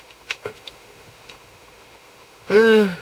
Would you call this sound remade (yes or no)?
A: yes